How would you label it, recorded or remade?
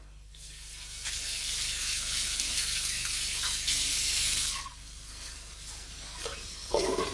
remade